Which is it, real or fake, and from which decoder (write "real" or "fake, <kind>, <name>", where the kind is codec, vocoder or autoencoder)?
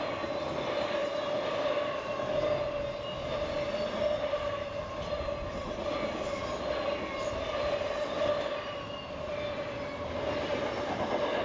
real